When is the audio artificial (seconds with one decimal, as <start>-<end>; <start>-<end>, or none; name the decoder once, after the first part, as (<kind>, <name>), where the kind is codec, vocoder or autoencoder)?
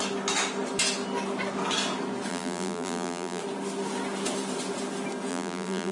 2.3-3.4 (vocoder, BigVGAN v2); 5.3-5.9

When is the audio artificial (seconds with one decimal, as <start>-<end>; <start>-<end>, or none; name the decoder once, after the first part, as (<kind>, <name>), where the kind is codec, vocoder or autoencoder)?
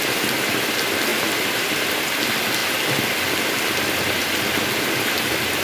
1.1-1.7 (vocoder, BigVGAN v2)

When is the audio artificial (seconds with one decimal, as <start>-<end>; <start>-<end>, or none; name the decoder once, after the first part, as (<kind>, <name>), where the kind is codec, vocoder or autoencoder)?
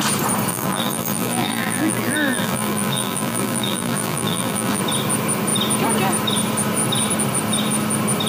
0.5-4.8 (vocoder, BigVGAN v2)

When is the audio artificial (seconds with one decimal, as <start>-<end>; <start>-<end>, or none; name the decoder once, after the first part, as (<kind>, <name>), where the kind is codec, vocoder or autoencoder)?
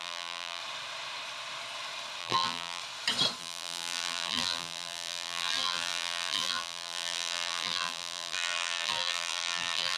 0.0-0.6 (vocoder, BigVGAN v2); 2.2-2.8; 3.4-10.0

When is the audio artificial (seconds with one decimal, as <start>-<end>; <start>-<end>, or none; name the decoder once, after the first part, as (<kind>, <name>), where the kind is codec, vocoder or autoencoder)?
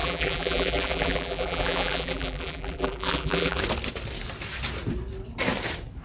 0.0-3.6 (vocoder, BigVGAN v2)